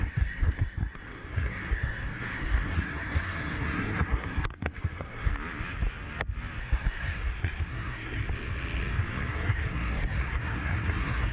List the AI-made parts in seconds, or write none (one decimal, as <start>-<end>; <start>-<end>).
0.0-5.3; 6.6-8.2; 9.3-11.3